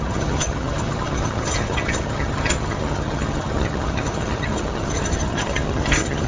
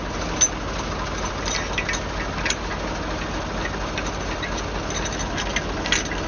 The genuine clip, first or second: second